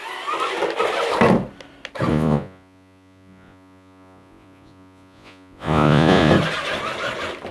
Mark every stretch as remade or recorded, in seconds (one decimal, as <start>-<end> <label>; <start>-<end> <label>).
0.0-2.1 recorded; 2.1-6.3 remade; 6.3-7.5 recorded